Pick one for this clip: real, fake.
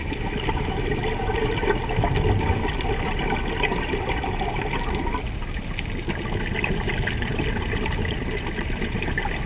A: real